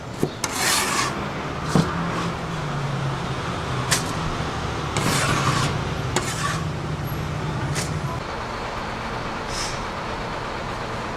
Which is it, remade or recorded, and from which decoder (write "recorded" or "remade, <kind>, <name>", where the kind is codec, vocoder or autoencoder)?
recorded